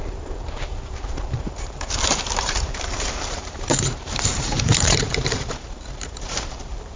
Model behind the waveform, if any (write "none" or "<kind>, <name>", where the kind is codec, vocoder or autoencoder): vocoder, BigVGAN v2